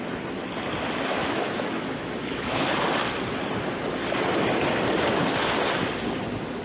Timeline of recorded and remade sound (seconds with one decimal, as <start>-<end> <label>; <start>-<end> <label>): 0.0-1.1 recorded; 1.1-2.7 remade; 2.7-6.6 recorded

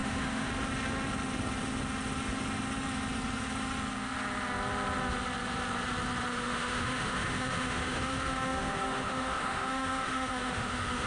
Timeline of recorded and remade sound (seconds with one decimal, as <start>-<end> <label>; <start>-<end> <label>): 0.0-0.5 remade; 0.5-6.3 recorded; 6.3-11.1 remade

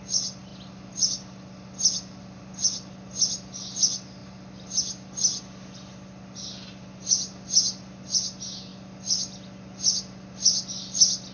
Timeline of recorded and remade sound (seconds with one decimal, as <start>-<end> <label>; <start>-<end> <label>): 0.0-11.3 recorded

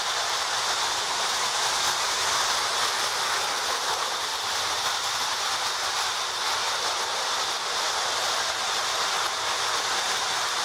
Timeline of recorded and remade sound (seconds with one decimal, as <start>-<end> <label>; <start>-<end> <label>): 0.0-10.6 recorded